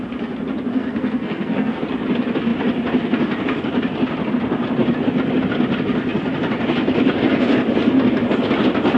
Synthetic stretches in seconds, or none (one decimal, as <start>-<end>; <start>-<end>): 0.7-1.8

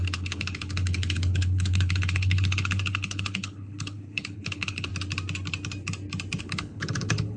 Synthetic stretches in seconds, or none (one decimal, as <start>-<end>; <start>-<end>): 0.0-4.9; 6.4-7.4